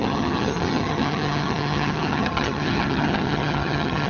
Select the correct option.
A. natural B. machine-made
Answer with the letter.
B